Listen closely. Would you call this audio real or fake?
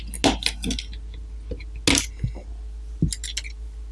real